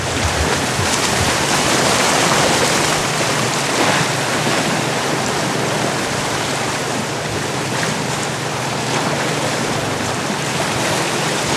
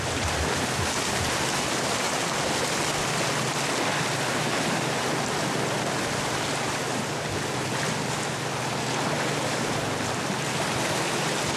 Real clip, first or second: second